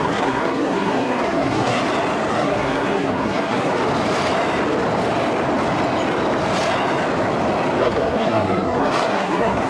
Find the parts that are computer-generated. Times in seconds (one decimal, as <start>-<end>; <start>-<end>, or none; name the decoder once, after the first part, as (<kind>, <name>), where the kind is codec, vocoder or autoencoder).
0.0-1.8 (codec, SNAC); 2.3-3.7; 7.8-9.7